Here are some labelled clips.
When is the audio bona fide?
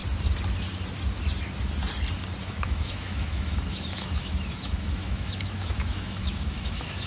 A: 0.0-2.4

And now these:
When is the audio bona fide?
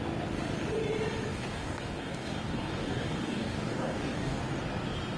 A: 0.0-1.3; 4.4-5.2